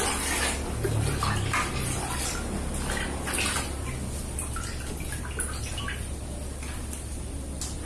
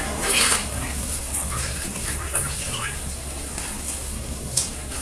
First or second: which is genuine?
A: first